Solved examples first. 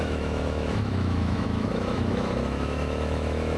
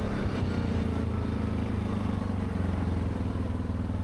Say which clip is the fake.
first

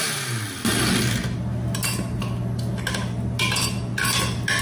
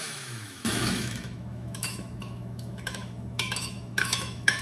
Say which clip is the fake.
second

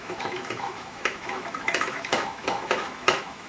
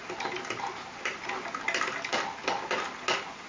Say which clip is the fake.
first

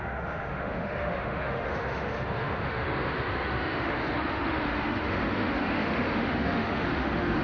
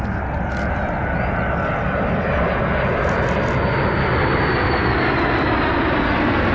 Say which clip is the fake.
first